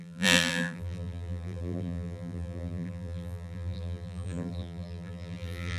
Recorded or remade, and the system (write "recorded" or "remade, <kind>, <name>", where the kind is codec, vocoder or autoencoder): remade, vocoder, BigVGAN v2